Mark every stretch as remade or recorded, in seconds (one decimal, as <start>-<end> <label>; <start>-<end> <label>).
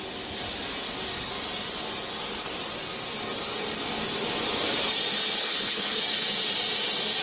0.0-5.4 recorded; 5.4-6.0 remade; 6.0-7.2 recorded